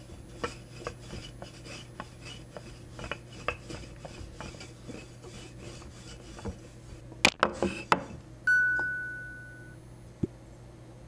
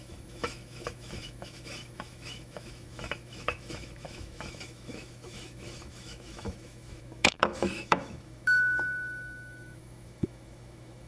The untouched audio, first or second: first